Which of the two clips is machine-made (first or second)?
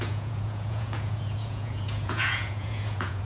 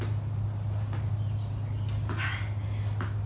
first